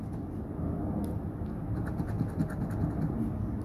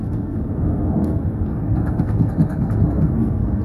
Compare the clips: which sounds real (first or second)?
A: first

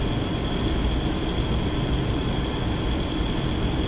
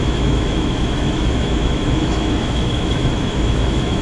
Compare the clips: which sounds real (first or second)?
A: first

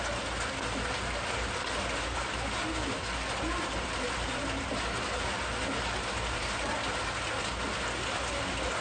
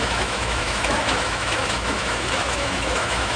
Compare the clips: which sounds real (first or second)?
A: first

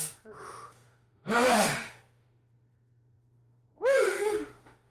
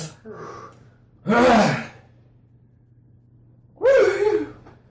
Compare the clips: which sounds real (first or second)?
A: second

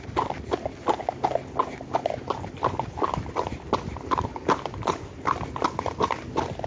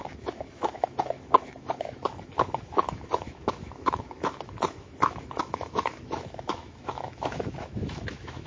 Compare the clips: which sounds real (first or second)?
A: first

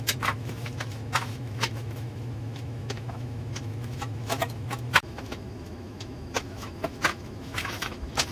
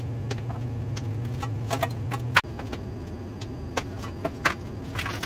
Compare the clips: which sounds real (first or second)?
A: second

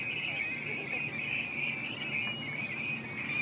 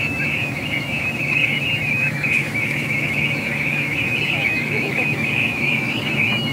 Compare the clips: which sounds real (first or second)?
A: first